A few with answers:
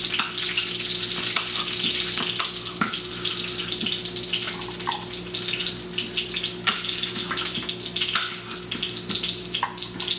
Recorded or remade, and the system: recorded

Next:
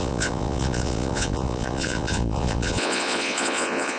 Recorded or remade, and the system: remade, vocoder, Vocos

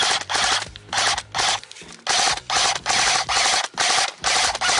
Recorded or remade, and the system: recorded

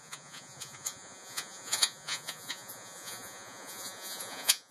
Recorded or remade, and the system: remade, vocoder, Vocos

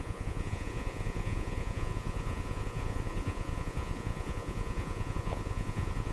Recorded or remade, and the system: remade, vocoder, Vocos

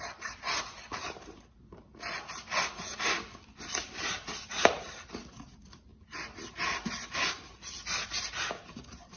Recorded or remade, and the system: recorded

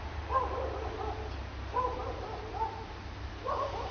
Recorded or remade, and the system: recorded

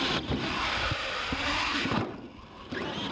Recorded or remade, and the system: recorded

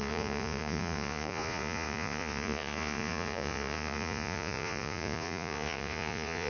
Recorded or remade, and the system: remade, vocoder, Vocos